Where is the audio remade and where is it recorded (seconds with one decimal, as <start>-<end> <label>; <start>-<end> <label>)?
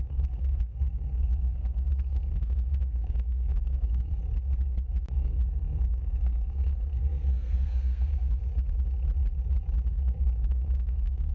0.0-4.2 remade; 4.2-5.1 recorded; 5.1-8.4 remade; 8.4-9.9 recorded; 9.9-11.3 remade